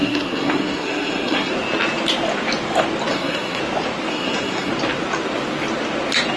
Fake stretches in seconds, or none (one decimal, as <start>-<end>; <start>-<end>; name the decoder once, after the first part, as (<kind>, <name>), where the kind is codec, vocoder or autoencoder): 0.0-1.5 (codec, SNAC); 3.1-3.6; 4.1-4.7